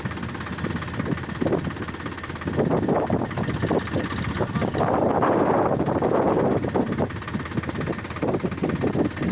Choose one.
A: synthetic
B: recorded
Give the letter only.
B